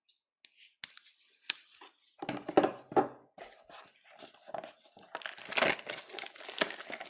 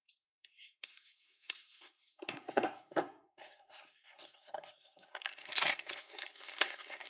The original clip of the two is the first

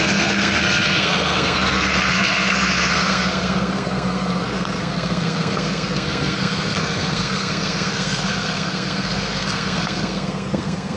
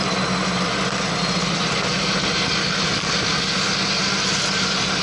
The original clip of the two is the second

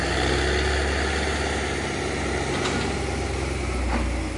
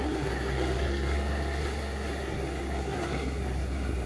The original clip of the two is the first